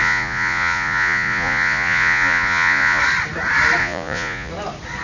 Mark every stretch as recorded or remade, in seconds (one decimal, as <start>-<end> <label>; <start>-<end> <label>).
0.0-3.0 remade; 3.0-3.8 recorded; 3.8-4.5 remade; 4.5-5.0 recorded